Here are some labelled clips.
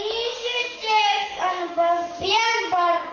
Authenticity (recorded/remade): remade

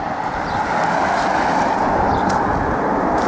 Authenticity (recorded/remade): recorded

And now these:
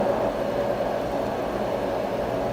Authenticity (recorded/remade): recorded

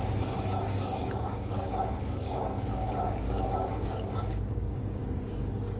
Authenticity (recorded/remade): remade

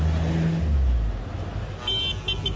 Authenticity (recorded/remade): recorded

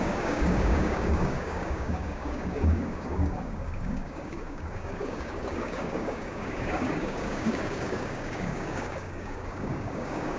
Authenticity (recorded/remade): remade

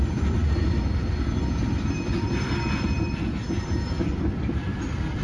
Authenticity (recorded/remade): recorded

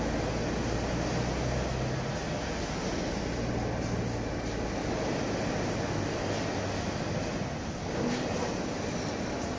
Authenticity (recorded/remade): recorded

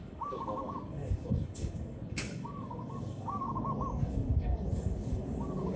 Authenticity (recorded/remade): remade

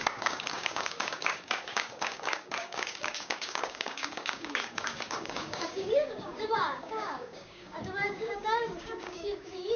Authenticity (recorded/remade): remade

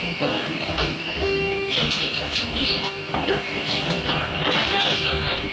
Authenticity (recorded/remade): remade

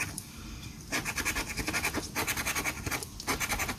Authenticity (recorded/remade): recorded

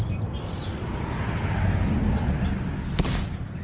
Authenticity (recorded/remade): recorded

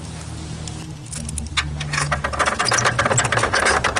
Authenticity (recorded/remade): recorded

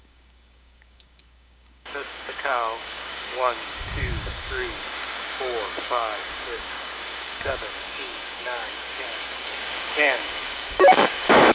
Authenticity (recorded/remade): remade